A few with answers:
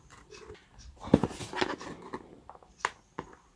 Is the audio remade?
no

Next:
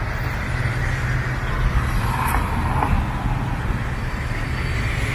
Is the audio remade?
no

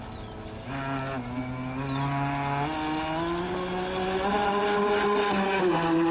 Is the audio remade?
no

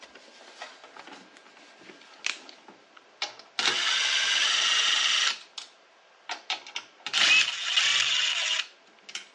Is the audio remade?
no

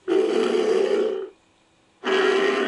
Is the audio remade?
no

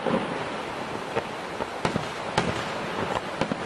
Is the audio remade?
no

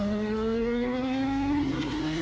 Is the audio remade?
yes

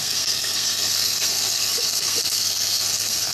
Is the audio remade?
yes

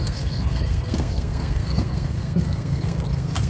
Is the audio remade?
yes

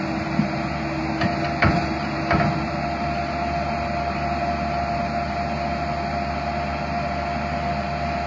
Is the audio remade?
no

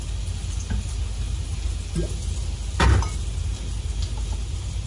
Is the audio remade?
no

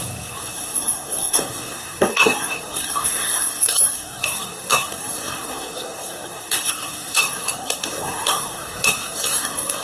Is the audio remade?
yes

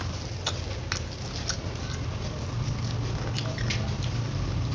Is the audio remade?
no